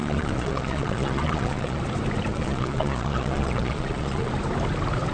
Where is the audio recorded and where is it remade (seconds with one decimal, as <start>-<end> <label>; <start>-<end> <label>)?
0.0-1.8 remade; 1.8-2.3 recorded; 2.3-4.3 remade; 4.3-5.1 recorded